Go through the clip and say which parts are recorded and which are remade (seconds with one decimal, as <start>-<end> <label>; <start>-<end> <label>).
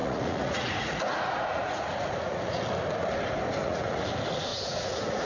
0.0-2.6 remade; 2.6-3.6 recorded; 3.6-4.1 remade; 4.1-4.5 recorded; 4.5-5.3 remade